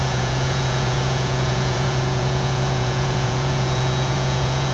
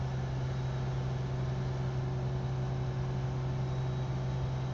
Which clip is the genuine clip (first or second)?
second